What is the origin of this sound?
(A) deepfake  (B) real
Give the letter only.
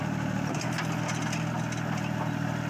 B